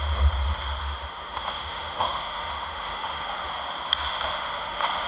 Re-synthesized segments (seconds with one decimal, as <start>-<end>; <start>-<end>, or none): 0.8-3.6; 4.1-5.1